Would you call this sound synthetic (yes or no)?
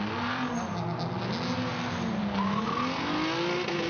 no